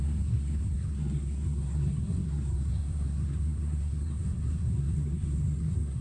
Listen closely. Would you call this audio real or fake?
fake